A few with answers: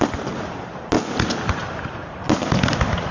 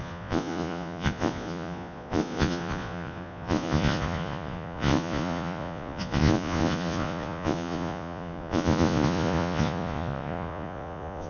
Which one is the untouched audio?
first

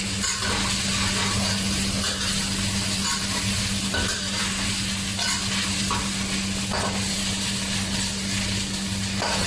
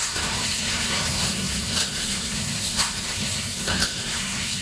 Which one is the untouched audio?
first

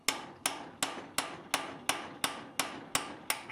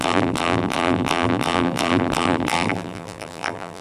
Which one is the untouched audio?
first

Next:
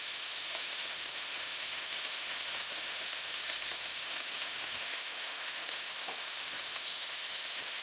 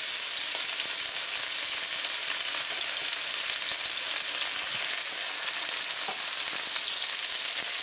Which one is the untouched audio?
second